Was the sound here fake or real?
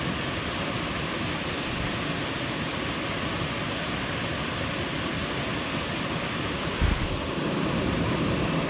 real